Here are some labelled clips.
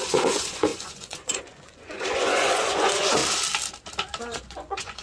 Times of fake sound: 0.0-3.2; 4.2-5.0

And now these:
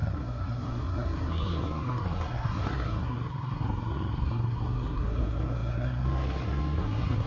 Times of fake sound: 0.0-7.3

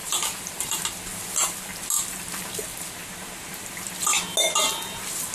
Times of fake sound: 0.0-0.8

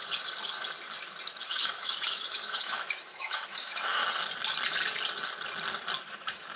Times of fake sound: 1.5-4.0; 6.1-6.6

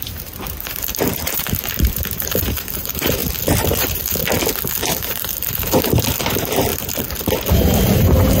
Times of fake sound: 0.0-3.2; 3.8-4.2; 4.8-6.7; 8.0-8.4

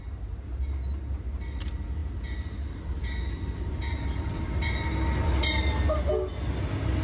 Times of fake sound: none